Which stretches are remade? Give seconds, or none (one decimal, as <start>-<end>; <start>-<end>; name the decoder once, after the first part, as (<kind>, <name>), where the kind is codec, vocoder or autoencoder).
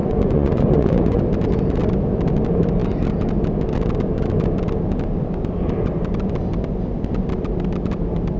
0.0-1.2 (vocoder, Vocos)